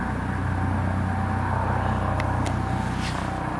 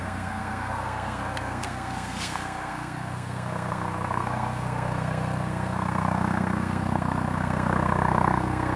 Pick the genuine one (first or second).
first